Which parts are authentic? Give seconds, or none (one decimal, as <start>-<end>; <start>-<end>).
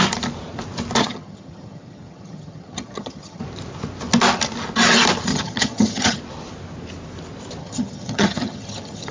0.0-1.0; 3.4-5.3; 6.2-7.6